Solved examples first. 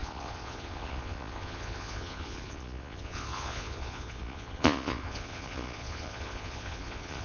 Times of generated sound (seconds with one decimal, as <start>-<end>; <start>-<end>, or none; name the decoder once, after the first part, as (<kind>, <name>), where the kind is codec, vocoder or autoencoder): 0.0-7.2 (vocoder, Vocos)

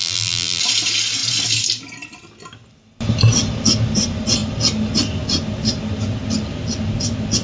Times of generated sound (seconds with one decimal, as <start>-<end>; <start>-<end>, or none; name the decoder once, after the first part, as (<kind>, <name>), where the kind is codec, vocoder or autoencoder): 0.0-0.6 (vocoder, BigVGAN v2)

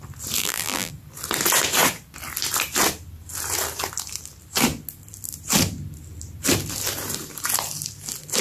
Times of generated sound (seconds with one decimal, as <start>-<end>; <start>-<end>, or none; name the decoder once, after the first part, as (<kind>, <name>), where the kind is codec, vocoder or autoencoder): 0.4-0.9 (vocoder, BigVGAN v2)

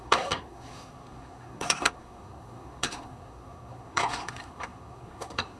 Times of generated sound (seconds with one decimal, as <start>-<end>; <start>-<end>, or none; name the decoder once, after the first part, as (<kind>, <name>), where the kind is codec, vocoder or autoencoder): 0.0-5.6 (codec, SNAC)

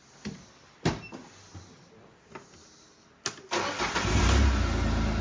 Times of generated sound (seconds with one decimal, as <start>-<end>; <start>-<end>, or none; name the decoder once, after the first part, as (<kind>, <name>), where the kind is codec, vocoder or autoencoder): none

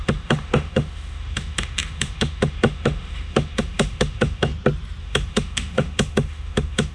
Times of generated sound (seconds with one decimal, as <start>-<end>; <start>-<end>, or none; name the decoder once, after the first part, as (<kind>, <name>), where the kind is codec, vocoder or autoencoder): 0.0-4.5 (autoencoder, DAC-VAE); 5.0-6.9